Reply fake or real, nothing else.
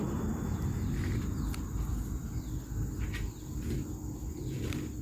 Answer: real